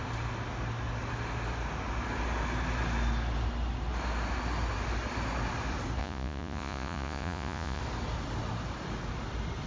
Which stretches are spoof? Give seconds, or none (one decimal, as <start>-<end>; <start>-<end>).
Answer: 6.0-7.8